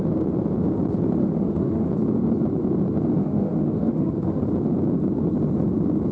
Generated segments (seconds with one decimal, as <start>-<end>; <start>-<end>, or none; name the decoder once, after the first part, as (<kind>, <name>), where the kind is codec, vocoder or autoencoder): 1.2-1.9 (autoencoder, DAC-VAE); 3.2-4.4